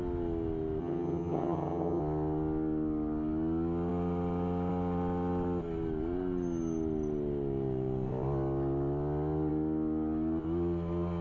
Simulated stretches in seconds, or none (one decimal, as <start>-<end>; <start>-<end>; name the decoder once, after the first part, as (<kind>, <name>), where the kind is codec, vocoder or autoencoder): 0.8-2.0 (vocoder, HiFi-GAN)